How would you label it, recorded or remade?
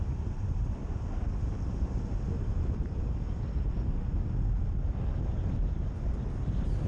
recorded